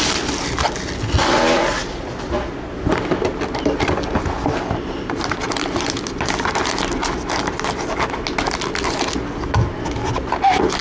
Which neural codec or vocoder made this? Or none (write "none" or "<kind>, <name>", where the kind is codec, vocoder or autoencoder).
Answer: none